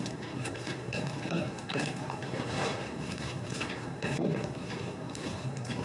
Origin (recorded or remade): remade